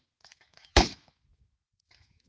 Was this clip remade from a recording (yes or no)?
yes